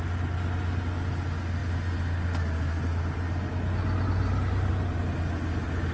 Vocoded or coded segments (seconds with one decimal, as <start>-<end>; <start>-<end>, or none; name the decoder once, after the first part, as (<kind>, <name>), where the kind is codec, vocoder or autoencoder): none